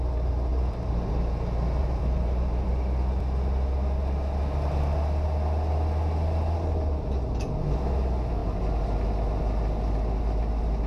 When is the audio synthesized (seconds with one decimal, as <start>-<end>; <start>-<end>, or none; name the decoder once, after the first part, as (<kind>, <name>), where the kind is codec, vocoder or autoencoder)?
0.5-1.1 (vocoder, BigVGAN v2); 1.8-2.7